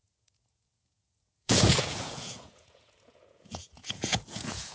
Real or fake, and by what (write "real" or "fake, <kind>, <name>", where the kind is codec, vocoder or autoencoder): fake, vocoder, Vocos